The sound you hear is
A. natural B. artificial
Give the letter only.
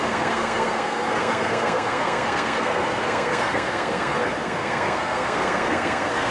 B